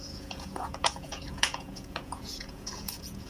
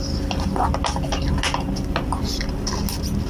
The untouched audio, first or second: second